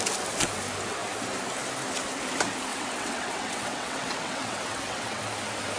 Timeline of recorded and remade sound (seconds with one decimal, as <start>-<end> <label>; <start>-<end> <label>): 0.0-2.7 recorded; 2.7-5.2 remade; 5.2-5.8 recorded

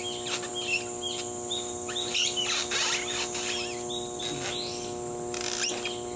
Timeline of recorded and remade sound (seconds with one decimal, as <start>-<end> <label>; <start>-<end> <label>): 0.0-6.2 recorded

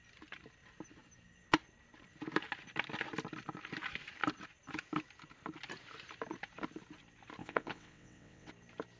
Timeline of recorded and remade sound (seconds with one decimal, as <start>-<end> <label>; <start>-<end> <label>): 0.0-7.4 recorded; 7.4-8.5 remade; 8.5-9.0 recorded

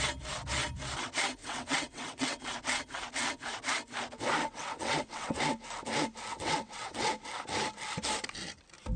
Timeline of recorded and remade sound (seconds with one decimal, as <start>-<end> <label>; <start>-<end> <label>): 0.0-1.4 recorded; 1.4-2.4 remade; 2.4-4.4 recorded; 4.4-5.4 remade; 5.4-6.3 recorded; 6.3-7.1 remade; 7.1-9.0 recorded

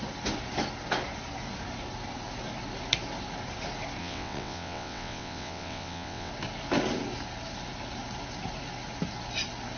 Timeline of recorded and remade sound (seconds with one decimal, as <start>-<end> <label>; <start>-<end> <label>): 0.0-4.0 recorded; 4.0-6.3 remade; 6.3-9.8 recorded

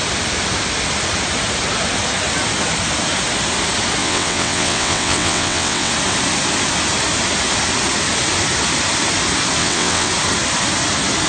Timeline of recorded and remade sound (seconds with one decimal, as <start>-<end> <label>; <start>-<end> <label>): 0.0-4.0 recorded; 4.0-5.9 remade; 5.9-9.6 recorded; 9.6-10.1 remade; 10.1-11.3 recorded